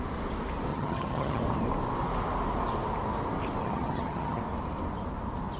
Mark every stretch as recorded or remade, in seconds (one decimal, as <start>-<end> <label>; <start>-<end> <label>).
0.0-0.7 recorded; 0.7-1.4 remade; 1.4-3.6 recorded; 3.6-4.4 remade; 4.4-5.6 recorded